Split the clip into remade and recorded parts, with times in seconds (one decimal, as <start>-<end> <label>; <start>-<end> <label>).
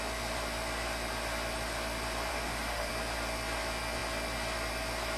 0.0-2.3 recorded; 2.3-2.9 remade; 2.9-5.2 recorded